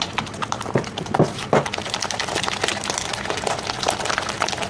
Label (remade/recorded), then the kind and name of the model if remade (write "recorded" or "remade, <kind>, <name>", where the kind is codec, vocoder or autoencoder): recorded